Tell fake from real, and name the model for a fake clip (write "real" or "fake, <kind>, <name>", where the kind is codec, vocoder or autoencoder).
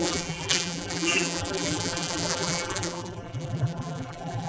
fake, vocoder, BigVGAN v2